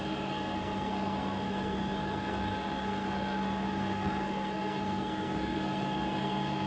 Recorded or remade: remade